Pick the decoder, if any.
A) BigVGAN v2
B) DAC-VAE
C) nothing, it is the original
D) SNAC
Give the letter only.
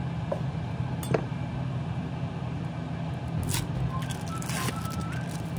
C